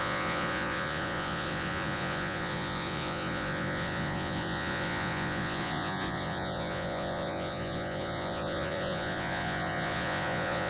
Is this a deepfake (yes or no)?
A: yes